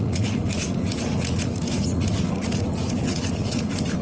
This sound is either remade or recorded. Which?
remade